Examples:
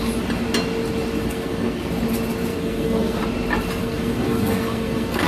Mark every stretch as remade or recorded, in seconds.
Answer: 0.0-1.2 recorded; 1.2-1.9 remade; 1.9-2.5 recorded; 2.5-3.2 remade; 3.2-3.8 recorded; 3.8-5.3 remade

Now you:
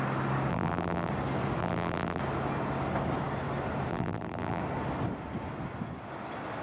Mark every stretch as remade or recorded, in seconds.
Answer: 0.0-0.5 recorded; 0.5-1.1 remade; 1.1-1.6 recorded; 1.6-2.2 remade; 2.2-3.9 recorded; 3.9-4.6 remade; 4.6-6.6 recorded

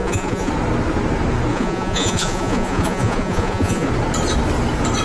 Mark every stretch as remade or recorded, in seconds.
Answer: 0.0-0.5 remade; 0.5-1.5 recorded; 1.5-3.9 remade; 3.9-5.0 recorded